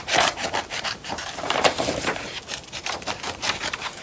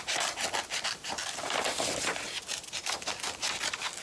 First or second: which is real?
second